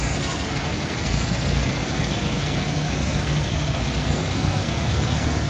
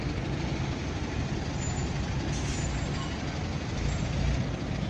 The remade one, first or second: first